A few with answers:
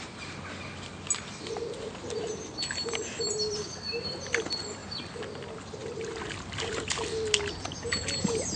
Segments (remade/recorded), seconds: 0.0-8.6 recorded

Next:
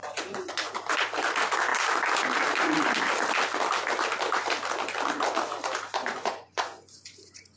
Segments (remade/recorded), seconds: 0.0-0.7 remade; 0.7-6.0 recorded; 6.0-7.6 remade